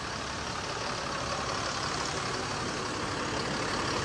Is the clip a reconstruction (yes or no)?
no